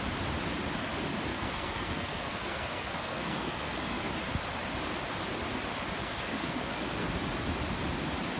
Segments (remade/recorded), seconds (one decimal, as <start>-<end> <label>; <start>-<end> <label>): 0.0-1.3 recorded; 1.3-4.1 remade; 4.1-6.0 recorded; 6.0-7.1 remade; 7.1-8.4 recorded